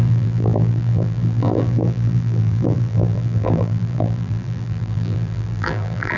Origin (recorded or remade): remade